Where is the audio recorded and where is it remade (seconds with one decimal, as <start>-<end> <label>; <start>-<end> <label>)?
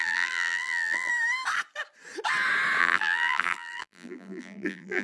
0.0-1.1 remade; 1.1-2.8 recorded; 2.8-5.0 remade